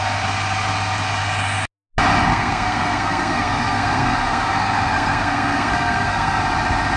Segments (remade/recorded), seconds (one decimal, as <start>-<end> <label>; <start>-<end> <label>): 0.0-2.3 recorded; 2.3-6.4 remade; 6.4-7.0 recorded